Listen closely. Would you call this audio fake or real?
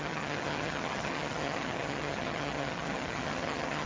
fake